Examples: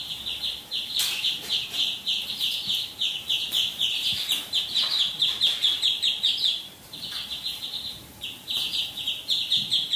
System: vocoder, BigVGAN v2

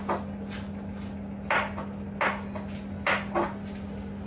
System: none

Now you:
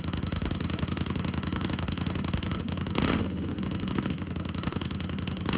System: autoencoder, DAC-VAE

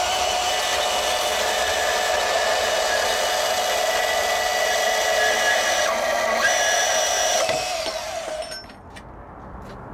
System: none